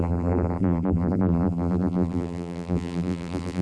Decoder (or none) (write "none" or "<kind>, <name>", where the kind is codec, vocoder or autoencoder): vocoder, BigVGAN v2